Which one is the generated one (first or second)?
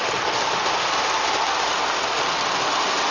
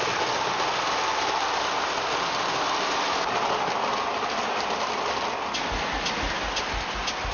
first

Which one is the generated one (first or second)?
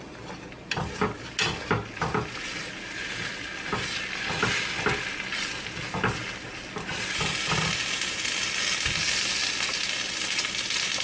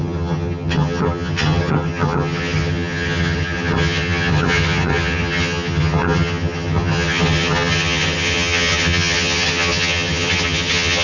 second